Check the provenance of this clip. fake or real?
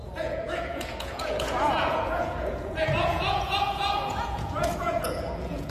fake